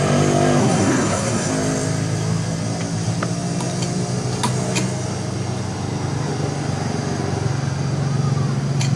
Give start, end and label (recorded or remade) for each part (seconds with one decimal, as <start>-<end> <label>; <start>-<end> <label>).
0.0-0.6 recorded; 0.6-1.5 remade; 1.5-9.0 recorded